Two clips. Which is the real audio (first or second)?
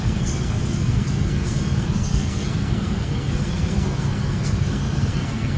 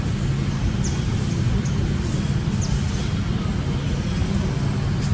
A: second